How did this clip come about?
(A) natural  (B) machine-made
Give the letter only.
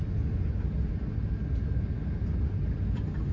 A